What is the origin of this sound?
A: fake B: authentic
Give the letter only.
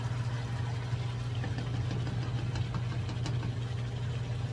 B